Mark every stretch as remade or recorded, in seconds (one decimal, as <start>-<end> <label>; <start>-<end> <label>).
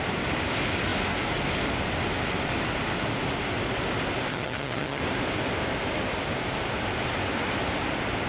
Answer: 0.0-4.3 recorded; 4.3-5.0 remade; 5.0-8.3 recorded